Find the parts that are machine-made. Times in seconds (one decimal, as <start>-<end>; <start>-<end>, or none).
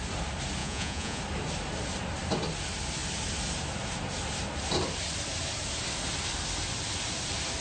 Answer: 0.6-1.2